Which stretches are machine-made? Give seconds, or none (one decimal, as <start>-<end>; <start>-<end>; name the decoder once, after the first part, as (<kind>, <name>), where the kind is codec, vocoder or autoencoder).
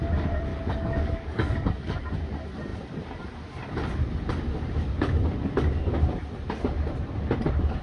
0.5-2.1 (codec, DAC)